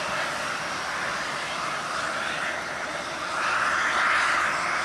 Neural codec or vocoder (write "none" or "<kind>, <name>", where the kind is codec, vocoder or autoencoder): none